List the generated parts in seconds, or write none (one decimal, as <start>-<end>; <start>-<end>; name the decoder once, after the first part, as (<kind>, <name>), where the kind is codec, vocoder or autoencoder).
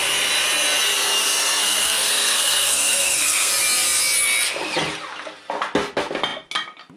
1.4-3.5 (codec, SNAC)